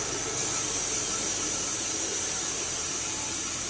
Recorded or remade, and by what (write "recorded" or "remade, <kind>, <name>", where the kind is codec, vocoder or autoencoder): remade, vocoder, BigVGAN v2